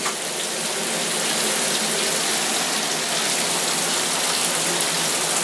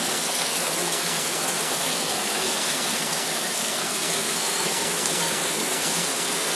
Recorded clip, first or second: first